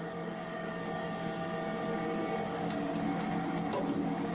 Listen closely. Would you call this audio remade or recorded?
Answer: remade